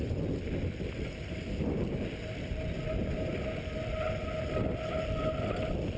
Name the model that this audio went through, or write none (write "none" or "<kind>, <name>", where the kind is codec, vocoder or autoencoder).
none